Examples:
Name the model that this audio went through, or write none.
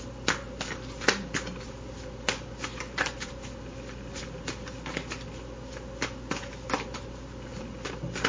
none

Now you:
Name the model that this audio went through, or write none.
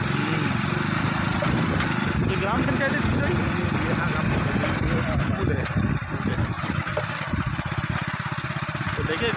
none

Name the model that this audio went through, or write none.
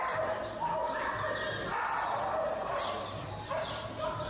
none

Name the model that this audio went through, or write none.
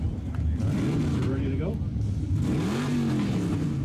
none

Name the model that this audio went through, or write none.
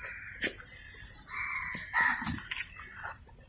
vocoder, BigVGAN v2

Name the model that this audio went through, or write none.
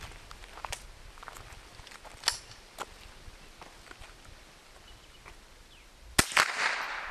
none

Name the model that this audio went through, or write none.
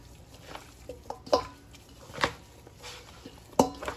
none